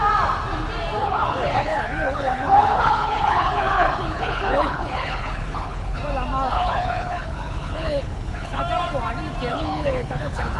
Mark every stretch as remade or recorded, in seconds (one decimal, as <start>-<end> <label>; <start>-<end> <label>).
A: 0.0-1.0 recorded; 1.0-6.0 remade; 6.0-6.5 recorded; 6.5-8.6 remade; 8.6-9.5 recorded; 9.5-10.6 remade